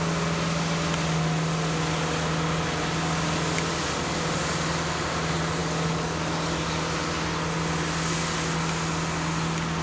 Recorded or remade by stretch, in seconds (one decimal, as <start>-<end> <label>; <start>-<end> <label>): 0.0-5.6 recorded; 5.6-6.8 remade; 6.8-9.8 recorded

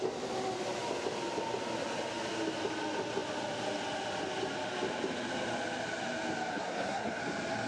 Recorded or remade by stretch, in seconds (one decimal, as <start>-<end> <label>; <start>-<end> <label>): 0.0-6.5 recorded; 6.5-7.2 remade; 7.2-7.7 recorded

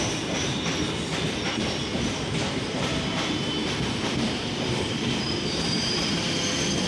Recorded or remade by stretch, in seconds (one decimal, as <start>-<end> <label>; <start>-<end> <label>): 0.0-0.7 remade; 0.7-1.7 recorded; 1.7-6.9 remade

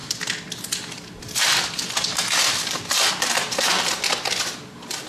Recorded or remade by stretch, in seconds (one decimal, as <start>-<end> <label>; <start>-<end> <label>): 0.0-3.1 remade; 3.1-5.1 recorded

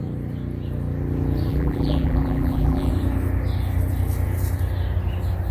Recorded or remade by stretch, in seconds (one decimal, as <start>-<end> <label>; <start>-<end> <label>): 0.0-1.5 recorded; 1.5-2.9 remade; 2.9-5.5 recorded

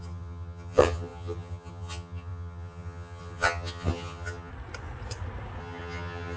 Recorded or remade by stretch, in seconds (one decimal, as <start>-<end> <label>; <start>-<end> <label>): 0.0-4.5 remade; 4.5-5.6 recorded; 5.6-6.4 remade